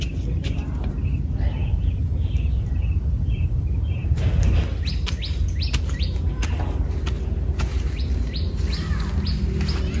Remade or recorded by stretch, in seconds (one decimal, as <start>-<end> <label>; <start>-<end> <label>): 0.0-1.6 recorded; 1.6-3.4 remade; 3.4-10.0 recorded